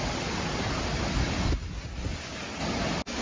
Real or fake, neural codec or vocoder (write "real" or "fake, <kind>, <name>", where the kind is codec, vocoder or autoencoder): real